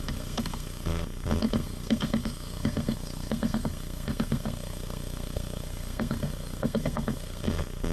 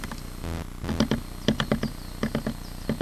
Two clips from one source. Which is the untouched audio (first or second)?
second